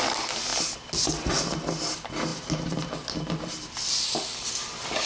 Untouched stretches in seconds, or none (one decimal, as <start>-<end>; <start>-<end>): 0.0-5.1